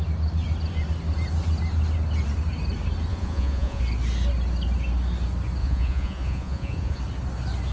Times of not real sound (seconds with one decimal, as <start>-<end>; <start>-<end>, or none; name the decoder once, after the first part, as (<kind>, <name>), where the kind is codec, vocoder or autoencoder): 3.1-3.8 (vocoder, Vocos); 5.6-7.0